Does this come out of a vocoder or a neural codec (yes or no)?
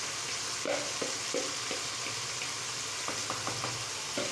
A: no